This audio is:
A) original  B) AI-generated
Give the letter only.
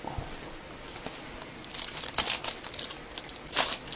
A